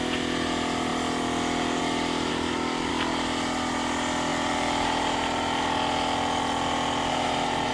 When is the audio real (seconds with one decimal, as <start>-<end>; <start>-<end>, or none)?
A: 0.0-2.3; 2.9-7.7